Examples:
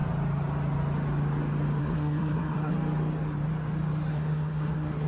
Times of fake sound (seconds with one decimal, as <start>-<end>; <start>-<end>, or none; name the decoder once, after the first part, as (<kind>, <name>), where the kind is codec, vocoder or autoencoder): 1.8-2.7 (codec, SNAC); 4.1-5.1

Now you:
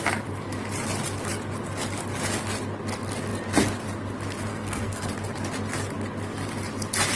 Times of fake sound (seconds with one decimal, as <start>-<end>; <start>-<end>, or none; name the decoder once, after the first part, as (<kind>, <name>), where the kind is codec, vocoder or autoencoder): 4.5-5.1 (codec, SNAC)

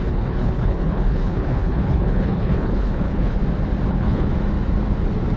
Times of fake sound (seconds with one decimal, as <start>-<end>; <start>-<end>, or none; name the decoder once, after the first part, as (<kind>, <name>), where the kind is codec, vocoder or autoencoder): 0.0-3.4 (codec, HILCodec); 3.9-4.3

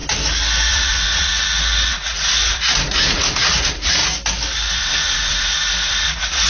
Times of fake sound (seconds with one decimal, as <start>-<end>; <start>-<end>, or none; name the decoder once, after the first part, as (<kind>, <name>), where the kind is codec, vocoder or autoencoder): 0.7-1.3 (vocoder, Vocos); 1.9-4.0; 4.7-6.5

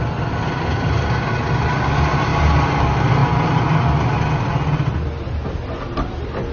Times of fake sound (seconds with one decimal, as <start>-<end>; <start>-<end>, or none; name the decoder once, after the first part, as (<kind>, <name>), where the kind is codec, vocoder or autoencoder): none

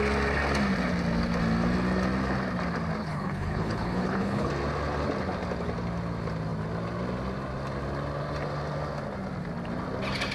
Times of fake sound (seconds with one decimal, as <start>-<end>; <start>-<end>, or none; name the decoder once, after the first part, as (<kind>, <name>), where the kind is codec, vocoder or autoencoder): 3.0-4.5 (codec, HILCodec)

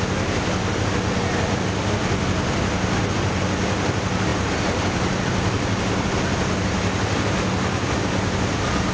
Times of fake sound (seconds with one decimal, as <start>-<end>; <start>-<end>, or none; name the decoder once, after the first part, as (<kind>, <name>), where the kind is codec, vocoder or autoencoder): none